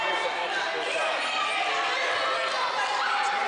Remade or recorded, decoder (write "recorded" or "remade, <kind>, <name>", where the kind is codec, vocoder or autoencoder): recorded